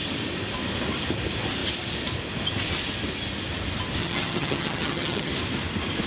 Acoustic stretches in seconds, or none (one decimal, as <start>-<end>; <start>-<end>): 0.0-4.0; 5.3-6.1

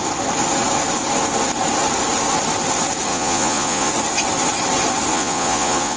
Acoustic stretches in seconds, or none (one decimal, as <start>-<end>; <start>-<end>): 0.0-3.1; 3.9-5.1

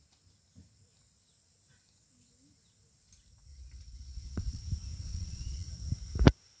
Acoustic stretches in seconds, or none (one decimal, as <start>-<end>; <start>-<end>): 0.0-3.5; 4.6-5.0; 5.7-6.6

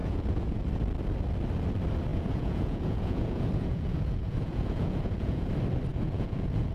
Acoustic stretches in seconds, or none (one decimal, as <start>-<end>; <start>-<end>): 0.6-2.1; 5.5-5.9